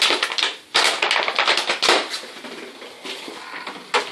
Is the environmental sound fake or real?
real